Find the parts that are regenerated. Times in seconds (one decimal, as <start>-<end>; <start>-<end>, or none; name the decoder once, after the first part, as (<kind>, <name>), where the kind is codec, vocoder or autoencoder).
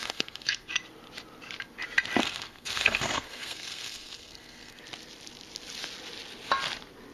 0.0-0.7 (codec, SNAC); 2.2-4.8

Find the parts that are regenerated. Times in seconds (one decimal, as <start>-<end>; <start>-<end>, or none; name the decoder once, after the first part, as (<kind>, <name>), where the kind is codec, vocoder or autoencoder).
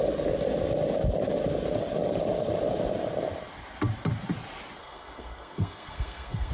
4.8-6.5 (codec, SNAC)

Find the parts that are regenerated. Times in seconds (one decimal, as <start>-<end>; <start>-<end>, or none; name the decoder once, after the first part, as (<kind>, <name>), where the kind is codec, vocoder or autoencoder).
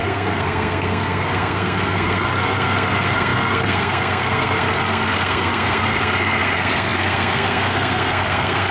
0.0-8.7 (codec, SNAC)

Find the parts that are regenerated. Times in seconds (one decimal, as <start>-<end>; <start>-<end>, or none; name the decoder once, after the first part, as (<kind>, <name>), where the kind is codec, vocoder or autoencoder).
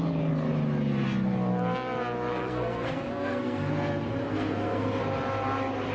2.3-3.7 (codec, SNAC); 4.2-5.0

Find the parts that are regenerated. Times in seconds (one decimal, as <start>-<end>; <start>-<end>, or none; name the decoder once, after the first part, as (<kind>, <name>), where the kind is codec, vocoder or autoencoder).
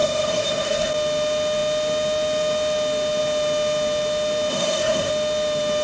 0.0-0.9 (codec, SNAC); 4.5-5.1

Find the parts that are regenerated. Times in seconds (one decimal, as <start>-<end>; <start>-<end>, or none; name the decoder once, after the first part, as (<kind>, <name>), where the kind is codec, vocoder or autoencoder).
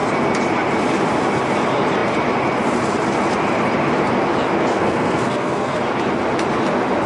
4.7-5.8 (codec, SNAC)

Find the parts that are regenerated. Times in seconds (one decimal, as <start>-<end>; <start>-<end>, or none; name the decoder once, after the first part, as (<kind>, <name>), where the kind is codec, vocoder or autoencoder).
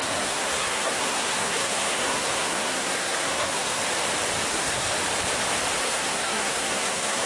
0.0-3.8 (codec, SNAC); 4.5-4.9; 5.8-7.3